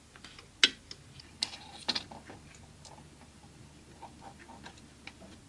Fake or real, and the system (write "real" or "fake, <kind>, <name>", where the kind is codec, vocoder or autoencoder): real